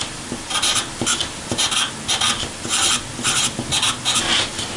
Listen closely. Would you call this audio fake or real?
real